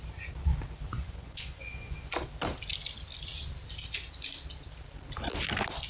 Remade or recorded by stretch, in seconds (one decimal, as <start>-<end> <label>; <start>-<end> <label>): 0.0-0.9 recorded; 0.9-2.1 remade; 2.1-5.9 recorded